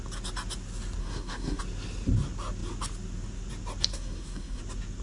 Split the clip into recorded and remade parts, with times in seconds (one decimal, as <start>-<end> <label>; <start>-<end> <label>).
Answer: 0.0-1.0 recorded; 1.0-1.6 remade; 1.6-3.9 recorded; 3.9-4.6 remade; 4.6-5.0 recorded